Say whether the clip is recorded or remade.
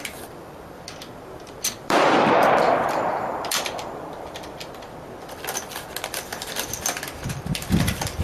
remade